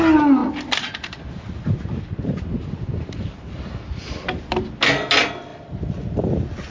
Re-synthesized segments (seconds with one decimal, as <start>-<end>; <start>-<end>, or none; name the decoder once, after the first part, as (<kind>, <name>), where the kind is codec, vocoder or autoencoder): 0.4-4.4 (vocoder, BigVGAN v2); 5.5-6.7

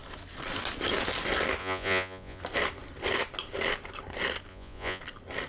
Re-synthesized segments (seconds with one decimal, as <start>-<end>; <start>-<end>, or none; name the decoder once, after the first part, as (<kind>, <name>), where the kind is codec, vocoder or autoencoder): 1.6-2.4 (vocoder, Vocos); 4.5-5.0

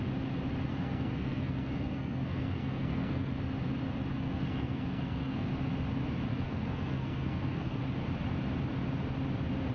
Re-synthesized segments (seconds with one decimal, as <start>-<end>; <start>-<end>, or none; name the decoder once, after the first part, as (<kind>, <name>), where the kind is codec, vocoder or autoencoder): 0.7-3.3 (codec, SNAC); 4.1-5.5; 6.3-7.8

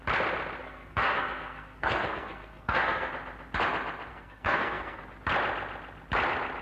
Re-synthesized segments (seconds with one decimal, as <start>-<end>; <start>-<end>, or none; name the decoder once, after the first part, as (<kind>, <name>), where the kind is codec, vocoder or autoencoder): 0.6-3.1 (codec, SNAC); 4.1-5.0

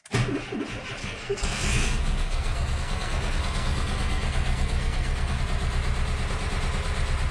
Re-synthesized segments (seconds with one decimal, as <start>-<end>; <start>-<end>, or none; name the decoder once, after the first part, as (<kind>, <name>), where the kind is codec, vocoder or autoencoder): 1.0-5.4 (codec, SNAC)

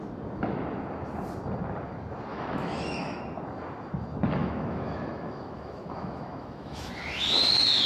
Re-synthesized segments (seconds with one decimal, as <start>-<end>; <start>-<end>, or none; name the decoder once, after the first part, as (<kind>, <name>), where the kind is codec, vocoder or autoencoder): 2.3-3.2 (autoencoder, DAC-VAE); 4.4-6.9

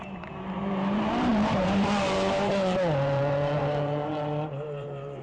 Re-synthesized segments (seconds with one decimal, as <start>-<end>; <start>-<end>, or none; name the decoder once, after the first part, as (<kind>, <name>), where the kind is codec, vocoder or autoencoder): 0.0-5.2 (vocoder, BigVGAN v2)